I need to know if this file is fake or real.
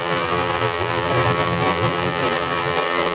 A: fake